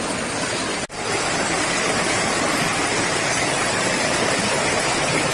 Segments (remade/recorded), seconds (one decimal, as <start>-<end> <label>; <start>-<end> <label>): 0.0-5.3 recorded

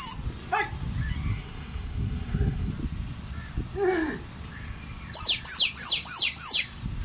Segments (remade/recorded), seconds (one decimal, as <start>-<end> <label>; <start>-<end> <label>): 0.0-1.3 recorded; 1.3-2.7 remade; 2.7-7.0 recorded